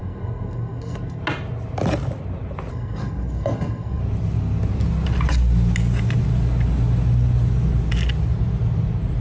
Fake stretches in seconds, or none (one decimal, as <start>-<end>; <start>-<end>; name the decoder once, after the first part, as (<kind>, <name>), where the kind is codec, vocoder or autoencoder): 0.0-1.2 (codec, SNAC); 2.7-4.0